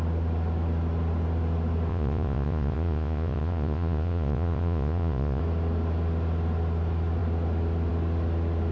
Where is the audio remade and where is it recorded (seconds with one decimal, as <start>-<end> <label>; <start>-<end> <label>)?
0.0-1.9 recorded; 1.9-5.4 remade; 5.4-8.7 recorded